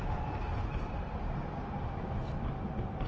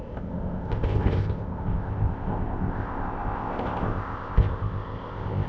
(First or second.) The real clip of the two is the first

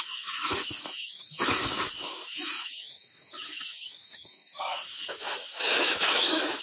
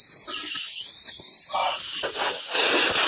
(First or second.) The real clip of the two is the second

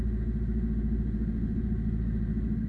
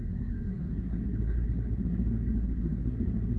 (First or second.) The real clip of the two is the first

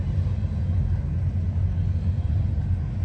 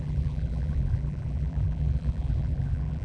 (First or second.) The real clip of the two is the first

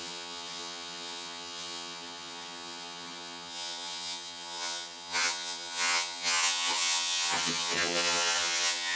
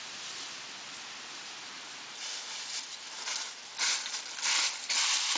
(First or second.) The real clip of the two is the second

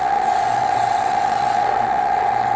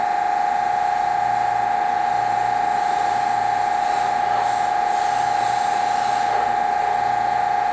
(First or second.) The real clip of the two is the second